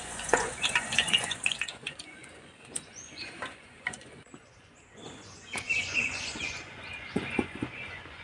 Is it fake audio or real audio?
fake